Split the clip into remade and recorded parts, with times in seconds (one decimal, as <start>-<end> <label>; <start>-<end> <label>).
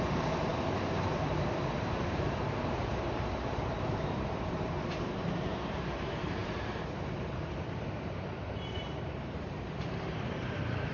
0.0-10.9 remade